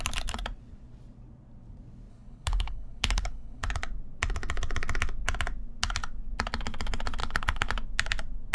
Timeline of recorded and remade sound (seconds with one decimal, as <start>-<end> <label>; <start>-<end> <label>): 0.0-2.1 recorded; 2.1-3.7 remade; 3.7-7.2 recorded; 7.2-7.7 remade; 7.7-8.5 recorded

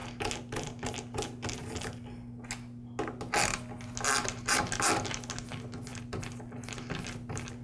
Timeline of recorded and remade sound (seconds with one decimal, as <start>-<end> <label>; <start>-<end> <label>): 0.0-7.6 recorded

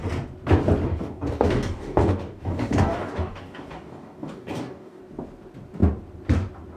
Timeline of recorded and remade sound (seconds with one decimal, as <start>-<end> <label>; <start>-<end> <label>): 0.0-0.9 recorded; 0.9-5.0 remade; 5.0-6.8 recorded

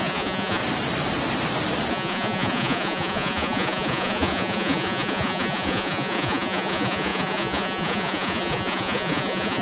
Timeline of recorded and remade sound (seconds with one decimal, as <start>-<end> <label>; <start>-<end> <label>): 0.0-0.6 remade; 0.6-1.9 recorded; 1.9-9.6 remade

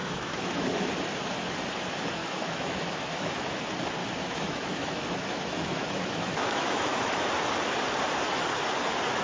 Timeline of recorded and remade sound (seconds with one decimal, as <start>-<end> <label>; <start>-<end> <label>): 0.0-0.9 remade; 0.9-2.2 recorded; 2.2-3.6 remade; 3.6-4.0 recorded; 4.0-7.3 remade; 7.3-9.2 recorded

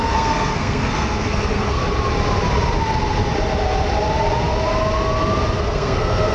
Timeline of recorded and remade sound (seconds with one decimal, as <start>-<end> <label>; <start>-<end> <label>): 0.0-1.8 remade; 1.8-5.6 recorded; 5.6-6.3 remade